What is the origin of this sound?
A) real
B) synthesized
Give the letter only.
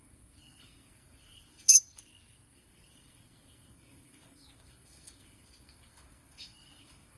B